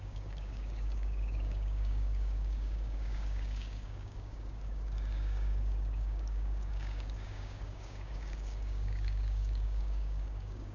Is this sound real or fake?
fake